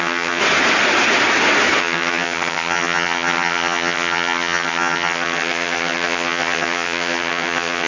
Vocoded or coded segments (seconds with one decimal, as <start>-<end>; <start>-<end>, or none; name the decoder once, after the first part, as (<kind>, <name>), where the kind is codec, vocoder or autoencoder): 0.0-0.4 (vocoder, HiFi-GAN); 1.8-7.9